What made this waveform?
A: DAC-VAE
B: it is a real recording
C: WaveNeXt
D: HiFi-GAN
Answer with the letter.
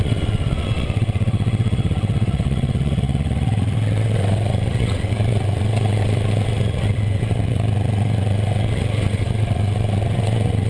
C